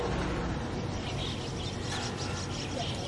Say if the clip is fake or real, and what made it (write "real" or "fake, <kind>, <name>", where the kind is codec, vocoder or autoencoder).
real